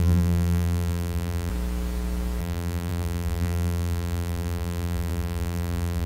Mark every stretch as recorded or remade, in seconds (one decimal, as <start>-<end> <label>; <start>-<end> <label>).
0.0-1.5 remade; 1.5-2.4 recorded; 2.4-6.1 remade